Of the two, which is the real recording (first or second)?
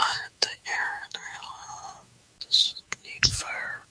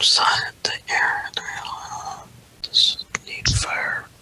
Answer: second